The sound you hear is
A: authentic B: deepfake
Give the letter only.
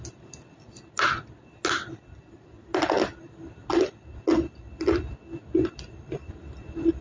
A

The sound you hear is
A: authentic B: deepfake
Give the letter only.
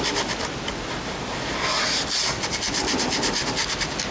A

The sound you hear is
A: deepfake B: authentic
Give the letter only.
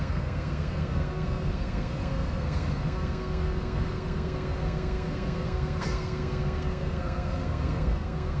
A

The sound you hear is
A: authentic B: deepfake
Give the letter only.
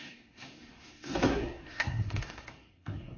B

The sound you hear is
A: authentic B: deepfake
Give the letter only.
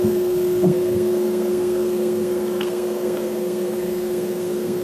B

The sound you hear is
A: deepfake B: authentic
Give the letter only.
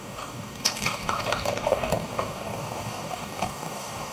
A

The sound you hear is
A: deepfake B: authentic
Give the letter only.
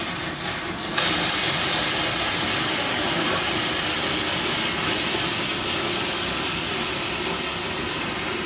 B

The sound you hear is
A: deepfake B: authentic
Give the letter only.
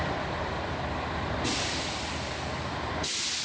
A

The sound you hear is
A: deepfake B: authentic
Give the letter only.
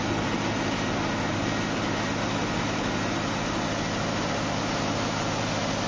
B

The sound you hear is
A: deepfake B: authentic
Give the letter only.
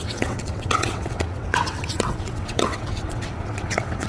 A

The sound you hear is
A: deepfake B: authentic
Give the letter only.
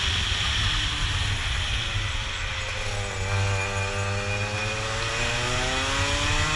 B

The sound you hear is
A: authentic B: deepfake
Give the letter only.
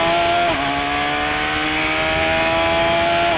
A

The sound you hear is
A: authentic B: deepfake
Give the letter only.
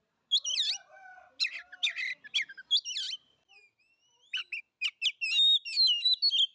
A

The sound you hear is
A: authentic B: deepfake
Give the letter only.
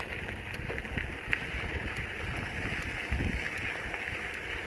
A